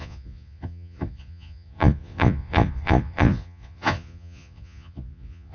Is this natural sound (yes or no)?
no